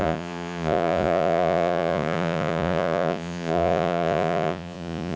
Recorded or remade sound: remade